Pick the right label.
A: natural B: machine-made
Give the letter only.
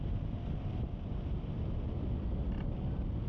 A